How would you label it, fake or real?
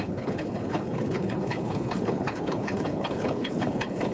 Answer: fake